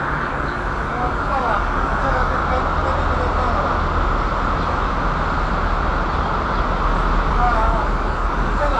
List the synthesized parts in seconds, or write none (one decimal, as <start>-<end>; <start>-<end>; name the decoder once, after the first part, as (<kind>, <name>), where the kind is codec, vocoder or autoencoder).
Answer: 0.0-2.4 (codec, DAC); 7.3-8.8